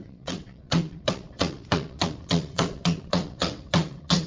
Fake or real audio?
fake